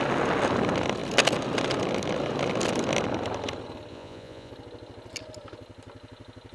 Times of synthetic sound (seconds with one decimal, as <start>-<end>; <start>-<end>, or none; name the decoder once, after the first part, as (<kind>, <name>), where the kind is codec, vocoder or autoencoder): 3.9-4.5 (vocoder, Vocos)